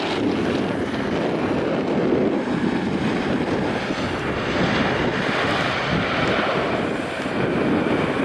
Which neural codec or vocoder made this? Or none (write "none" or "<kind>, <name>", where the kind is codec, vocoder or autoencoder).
none